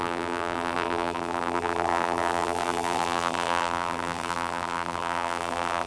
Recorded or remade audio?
remade